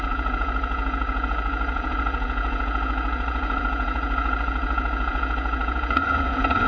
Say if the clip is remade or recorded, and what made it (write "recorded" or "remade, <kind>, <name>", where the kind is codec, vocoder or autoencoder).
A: remade, vocoder, Vocos